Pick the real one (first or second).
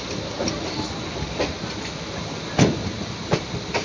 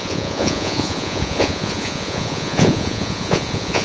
first